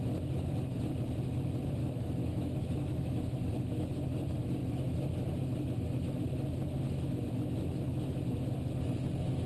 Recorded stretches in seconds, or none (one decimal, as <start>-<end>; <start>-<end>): 0.0-1.8; 4.1-9.5